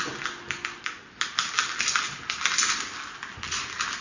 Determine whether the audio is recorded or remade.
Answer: recorded